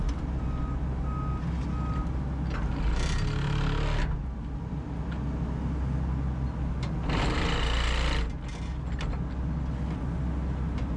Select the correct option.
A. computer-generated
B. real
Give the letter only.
B